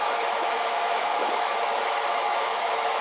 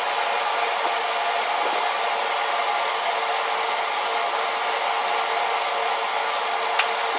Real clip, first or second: second